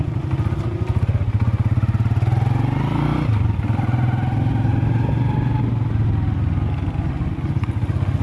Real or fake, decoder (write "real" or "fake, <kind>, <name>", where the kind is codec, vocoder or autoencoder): real